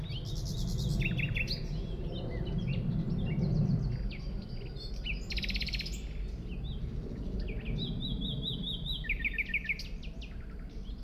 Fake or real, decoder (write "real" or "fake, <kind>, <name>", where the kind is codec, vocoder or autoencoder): real